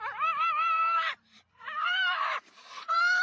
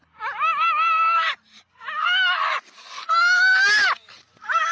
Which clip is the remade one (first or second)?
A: first